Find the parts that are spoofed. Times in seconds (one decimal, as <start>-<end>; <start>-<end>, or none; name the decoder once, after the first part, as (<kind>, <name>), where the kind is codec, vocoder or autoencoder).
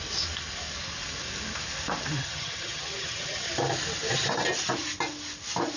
2.2-3.5 (vocoder, HiFi-GAN)